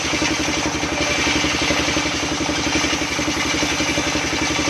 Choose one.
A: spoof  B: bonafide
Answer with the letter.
B